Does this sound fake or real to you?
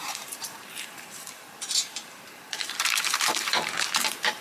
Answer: fake